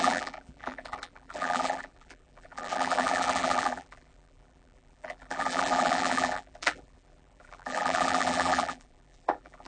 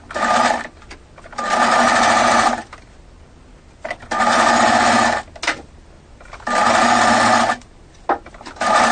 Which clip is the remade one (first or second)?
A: first